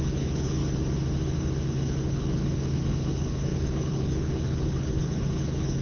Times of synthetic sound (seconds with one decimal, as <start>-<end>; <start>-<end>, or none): 0.0-0.6; 1.7-5.8